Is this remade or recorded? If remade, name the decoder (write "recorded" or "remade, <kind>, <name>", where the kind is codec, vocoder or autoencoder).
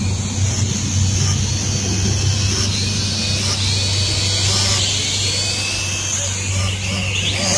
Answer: recorded